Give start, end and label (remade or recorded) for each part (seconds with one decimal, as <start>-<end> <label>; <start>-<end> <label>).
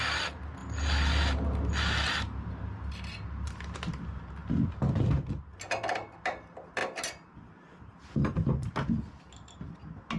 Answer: 0.0-10.2 recorded